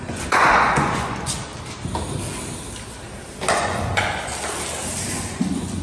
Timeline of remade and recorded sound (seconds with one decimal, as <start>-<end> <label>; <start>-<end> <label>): 0.0-1.5 remade; 1.5-3.5 recorded; 3.5-4.3 remade; 4.3-5.1 recorded; 5.1-5.8 remade